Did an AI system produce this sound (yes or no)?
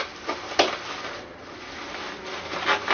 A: no